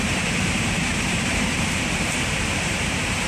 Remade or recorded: remade